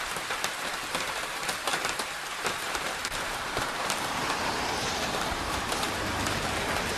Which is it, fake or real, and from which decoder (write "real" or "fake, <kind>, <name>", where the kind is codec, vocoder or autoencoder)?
fake, vocoder, BigVGAN v2